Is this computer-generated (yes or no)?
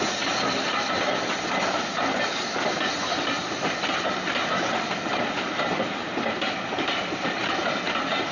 no